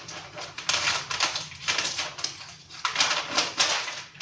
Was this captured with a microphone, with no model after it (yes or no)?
yes